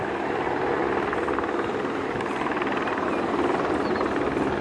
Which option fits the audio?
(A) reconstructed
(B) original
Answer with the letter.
B